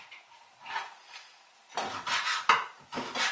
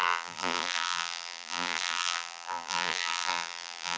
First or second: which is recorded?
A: first